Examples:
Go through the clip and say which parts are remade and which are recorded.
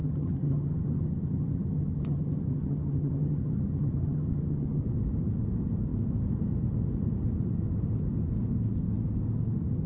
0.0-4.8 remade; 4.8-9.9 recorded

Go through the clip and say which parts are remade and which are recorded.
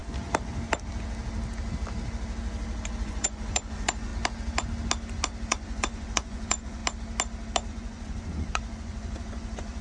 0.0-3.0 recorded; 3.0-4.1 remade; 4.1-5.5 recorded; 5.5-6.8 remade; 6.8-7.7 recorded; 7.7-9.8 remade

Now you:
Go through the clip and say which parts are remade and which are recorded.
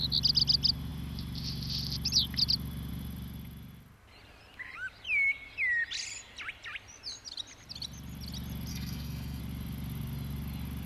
0.0-8.7 recorded; 8.7-9.4 remade; 9.4-10.9 recorded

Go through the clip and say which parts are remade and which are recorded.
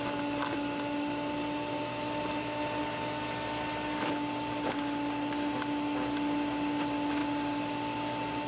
0.0-8.5 recorded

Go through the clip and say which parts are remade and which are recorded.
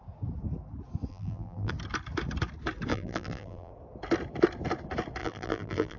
0.0-1.1 recorded; 1.1-1.7 remade; 1.7-2.9 recorded; 2.9-3.7 remade; 3.7-5.2 recorded; 5.2-6.0 remade